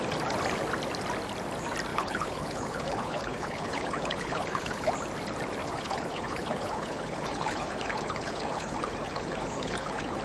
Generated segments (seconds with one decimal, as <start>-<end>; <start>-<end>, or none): 1.9-4.9; 5.6-10.2